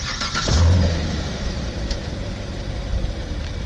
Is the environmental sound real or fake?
fake